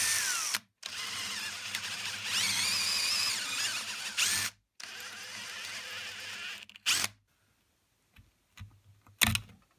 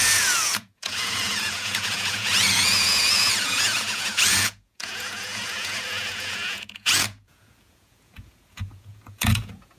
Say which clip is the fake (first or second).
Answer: second